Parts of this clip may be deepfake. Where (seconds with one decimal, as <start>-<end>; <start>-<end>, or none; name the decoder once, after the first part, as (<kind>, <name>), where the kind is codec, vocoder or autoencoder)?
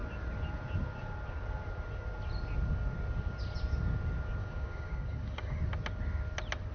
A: 4.4-5.6 (codec, DAC)